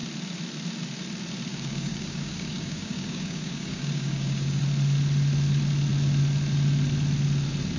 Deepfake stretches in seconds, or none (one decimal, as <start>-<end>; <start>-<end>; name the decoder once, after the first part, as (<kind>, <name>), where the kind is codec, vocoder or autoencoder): 1.5-4.6 (codec, DAC)